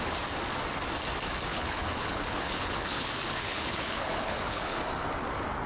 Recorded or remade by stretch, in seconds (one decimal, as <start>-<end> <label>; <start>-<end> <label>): 0.0-1.5 recorded; 1.5-4.8 remade; 4.8-5.7 recorded